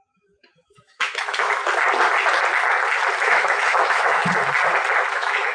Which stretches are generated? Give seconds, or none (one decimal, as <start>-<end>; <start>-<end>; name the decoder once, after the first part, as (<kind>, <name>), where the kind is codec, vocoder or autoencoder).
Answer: 0.0-1.6 (autoencoder, DAC-VAE); 3.2-4.2; 5.1-5.5